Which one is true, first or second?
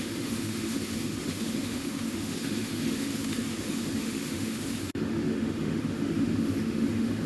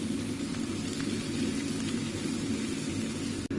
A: second